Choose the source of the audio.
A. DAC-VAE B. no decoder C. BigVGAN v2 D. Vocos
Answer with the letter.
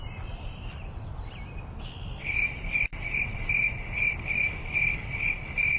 C